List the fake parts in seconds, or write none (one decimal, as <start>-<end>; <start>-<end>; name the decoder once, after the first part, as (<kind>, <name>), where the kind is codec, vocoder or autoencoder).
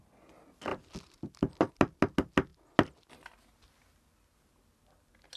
none